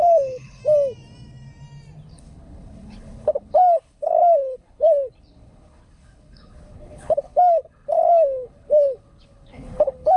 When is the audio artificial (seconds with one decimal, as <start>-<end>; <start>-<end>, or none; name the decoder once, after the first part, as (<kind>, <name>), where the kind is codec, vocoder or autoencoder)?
0.0-0.6 (codec, HILCodec); 2.1-10.2